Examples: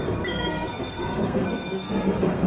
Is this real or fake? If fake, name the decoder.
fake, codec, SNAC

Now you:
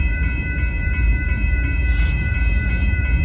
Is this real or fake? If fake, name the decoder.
fake, vocoder, BigVGAN v2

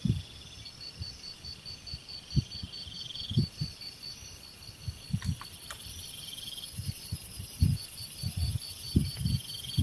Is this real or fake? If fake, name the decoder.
real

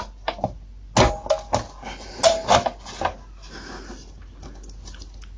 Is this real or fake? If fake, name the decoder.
real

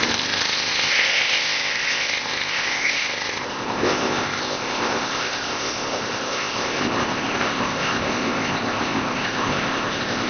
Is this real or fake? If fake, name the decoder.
fake, codec, ZipCodec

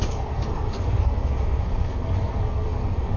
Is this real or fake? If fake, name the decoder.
fake, codec, SNAC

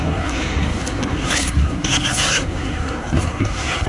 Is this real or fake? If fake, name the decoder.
fake, codec, SNAC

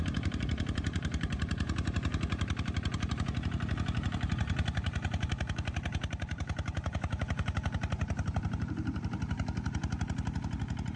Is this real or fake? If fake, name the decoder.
fake, vocoder, BigVGAN v2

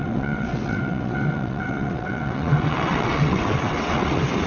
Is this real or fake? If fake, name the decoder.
fake, vocoder, WaveNeXt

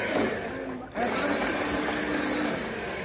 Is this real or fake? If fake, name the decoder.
real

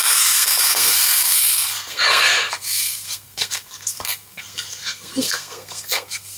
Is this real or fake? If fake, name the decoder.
fake, codec, SNAC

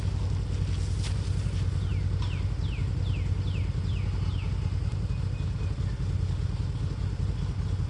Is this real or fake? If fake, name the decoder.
real